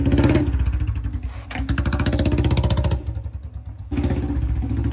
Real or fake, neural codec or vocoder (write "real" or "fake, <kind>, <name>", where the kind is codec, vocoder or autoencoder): real